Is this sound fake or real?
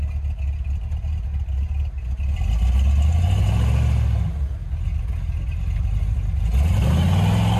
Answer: real